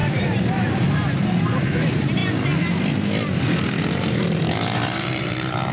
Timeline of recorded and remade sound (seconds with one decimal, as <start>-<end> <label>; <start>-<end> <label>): 0.0-2.2 remade; 2.2-3.8 recorded; 3.8-5.7 remade